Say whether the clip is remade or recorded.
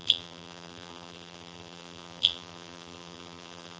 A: remade